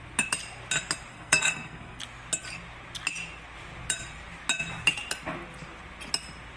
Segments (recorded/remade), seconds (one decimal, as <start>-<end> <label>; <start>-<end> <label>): 0.0-1.1 recorded; 1.1-2.0 remade; 2.0-6.6 recorded